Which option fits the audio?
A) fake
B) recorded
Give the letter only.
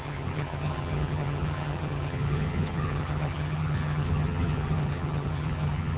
A